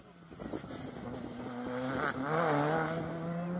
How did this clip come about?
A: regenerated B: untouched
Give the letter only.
B